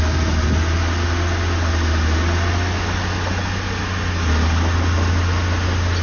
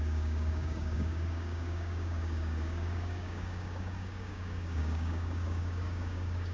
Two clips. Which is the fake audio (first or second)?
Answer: second